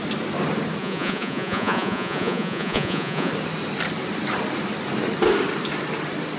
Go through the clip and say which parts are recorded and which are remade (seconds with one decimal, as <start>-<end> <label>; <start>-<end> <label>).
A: 0.0-0.8 recorded; 0.8-3.3 remade; 3.3-6.4 recorded